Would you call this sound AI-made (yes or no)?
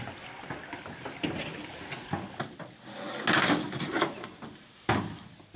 no